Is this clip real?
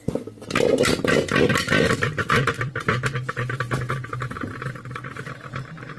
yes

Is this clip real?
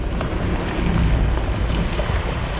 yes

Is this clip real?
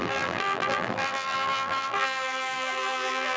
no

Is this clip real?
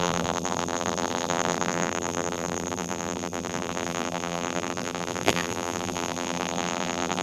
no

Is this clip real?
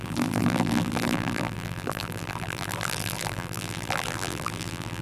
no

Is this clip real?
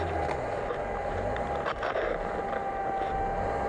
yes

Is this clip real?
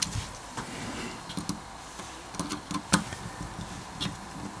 yes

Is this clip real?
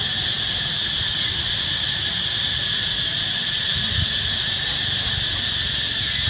yes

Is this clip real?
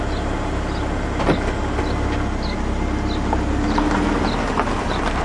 yes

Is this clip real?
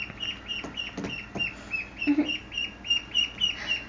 yes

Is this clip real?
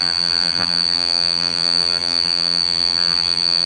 no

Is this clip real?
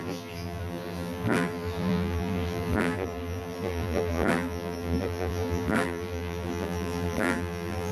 no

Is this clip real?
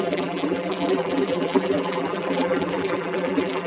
no